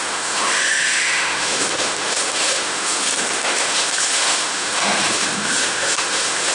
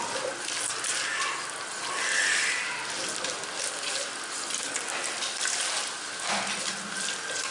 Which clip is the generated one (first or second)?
first